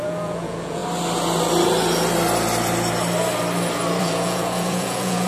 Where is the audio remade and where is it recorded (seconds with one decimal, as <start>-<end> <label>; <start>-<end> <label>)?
0.0-0.8 remade; 0.8-4.0 recorded; 4.0-5.3 remade